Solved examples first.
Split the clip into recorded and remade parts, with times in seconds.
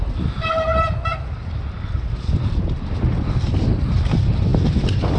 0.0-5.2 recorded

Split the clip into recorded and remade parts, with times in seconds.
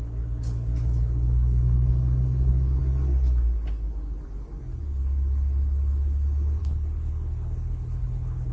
0.0-2.8 remade; 2.8-6.6 recorded; 6.6-8.5 remade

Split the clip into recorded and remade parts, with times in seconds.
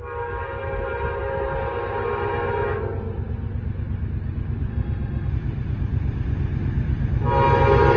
0.0-4.7 recorded; 4.7-5.3 remade; 5.3-8.0 recorded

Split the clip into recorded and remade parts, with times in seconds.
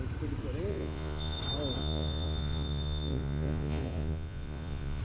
0.0-0.7 recorded; 0.7-1.4 remade; 1.4-1.8 recorded; 1.8-5.0 remade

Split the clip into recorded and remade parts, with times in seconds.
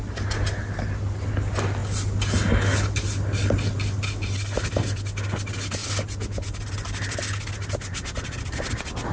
0.0-9.1 recorded